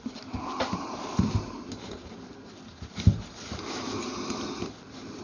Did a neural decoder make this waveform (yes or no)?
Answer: no